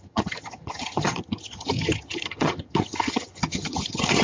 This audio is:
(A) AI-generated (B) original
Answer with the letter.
A